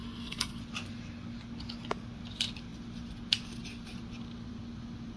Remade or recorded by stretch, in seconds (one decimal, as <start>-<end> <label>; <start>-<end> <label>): 0.0-0.6 remade; 0.6-5.2 recorded